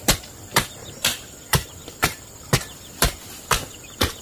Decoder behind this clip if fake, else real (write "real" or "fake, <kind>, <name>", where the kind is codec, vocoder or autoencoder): fake, vocoder, BigVGAN v2